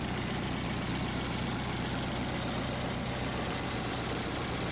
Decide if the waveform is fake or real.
real